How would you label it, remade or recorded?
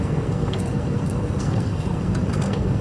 remade